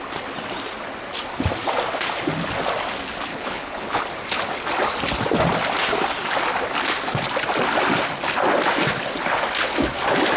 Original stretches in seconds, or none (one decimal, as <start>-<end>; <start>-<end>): 0.0-3.3; 4.0-10.4